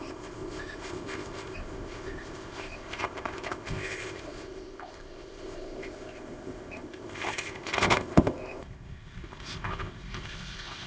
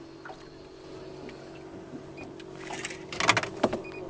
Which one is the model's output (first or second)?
first